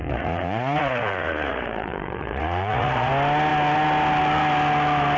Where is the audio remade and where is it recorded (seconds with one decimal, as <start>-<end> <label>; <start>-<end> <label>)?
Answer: 0.0-3.1 remade; 3.1-5.2 recorded